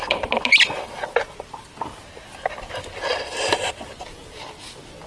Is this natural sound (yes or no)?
yes